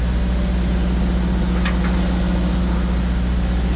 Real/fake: real